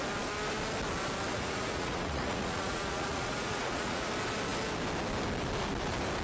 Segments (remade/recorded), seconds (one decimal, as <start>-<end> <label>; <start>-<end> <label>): 0.0-1.3 recorded; 1.3-4.1 remade; 4.1-6.2 recorded